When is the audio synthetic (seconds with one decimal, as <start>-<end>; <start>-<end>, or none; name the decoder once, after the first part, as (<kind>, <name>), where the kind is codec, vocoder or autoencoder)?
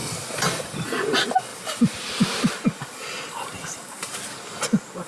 1.5-4.6 (vocoder, BigVGAN v2)